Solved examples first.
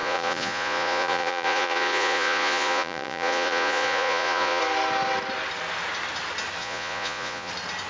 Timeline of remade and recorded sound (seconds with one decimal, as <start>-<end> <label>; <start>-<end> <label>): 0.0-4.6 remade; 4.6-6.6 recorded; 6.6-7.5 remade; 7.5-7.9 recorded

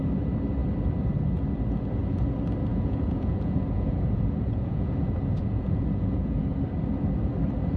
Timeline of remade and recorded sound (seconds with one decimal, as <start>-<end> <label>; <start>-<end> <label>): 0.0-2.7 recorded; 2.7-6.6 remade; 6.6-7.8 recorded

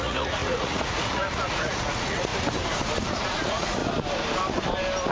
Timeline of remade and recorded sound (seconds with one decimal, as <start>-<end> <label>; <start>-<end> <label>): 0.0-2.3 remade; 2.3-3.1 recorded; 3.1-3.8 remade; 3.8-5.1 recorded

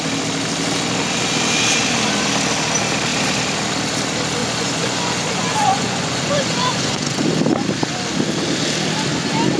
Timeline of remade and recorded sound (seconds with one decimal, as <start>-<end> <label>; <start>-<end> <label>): 0.0-4.4 recorded; 4.4-7.2 remade; 7.2-9.6 recorded

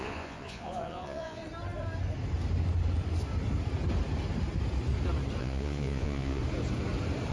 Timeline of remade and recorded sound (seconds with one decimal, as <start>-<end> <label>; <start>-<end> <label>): 0.0-1.4 remade; 1.4-5.4 recorded; 5.4-6.4 remade; 6.4-7.3 recorded

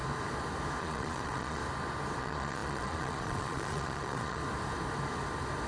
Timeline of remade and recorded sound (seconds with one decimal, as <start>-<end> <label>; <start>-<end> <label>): 0.0-0.8 recorded; 0.8-1.6 remade; 1.6-2.2 recorded; 2.2-4.4 remade; 4.4-5.7 recorded

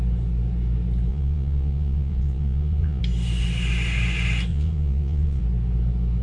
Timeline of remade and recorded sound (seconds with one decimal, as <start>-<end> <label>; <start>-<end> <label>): 0.0-1.1 recorded; 1.1-3.0 remade; 3.0-4.5 recorded; 4.5-5.4 remade; 5.4-6.2 recorded